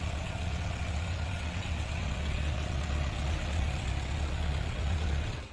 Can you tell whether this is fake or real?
fake